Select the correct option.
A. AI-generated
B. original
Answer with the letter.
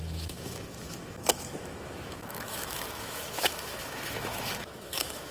A